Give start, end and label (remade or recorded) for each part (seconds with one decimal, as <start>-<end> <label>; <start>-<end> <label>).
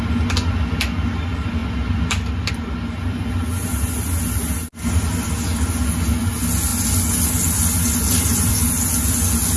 0.0-9.6 recorded